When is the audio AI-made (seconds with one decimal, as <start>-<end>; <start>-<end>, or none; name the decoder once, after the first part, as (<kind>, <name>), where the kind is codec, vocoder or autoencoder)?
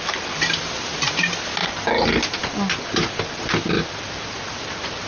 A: none